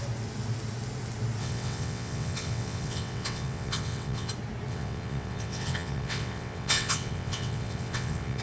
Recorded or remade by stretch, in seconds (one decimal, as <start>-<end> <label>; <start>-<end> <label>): 0.0-1.4 recorded; 1.4-4.3 remade; 4.3-4.7 recorded; 4.7-8.4 remade